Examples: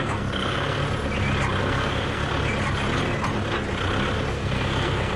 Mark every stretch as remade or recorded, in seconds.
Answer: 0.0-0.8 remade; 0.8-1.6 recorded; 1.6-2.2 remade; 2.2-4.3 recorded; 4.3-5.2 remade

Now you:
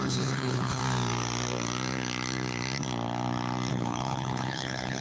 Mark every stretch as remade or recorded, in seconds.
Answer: 0.0-0.8 remade; 0.8-3.7 recorded; 3.7-5.0 remade

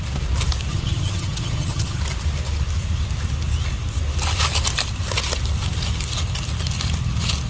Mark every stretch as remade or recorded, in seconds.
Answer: 0.0-0.7 recorded; 0.7-2.0 remade; 2.0-7.5 recorded

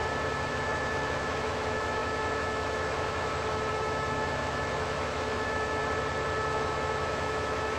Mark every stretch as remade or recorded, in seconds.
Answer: 0.0-0.5 recorded; 0.5-5.8 remade; 5.8-6.5 recorded; 6.5-7.8 remade